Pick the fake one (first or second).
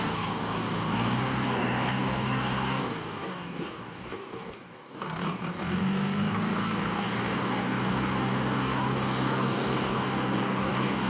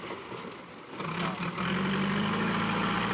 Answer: first